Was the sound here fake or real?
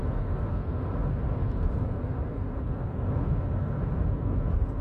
real